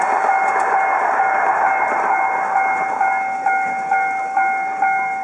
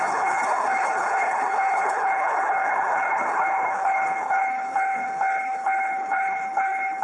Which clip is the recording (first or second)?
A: first